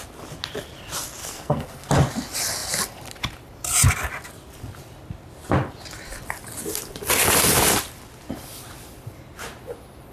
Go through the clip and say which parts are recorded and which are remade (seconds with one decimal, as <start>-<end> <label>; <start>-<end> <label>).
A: 0.0-1.2 recorded; 1.2-1.9 remade; 1.9-10.1 recorded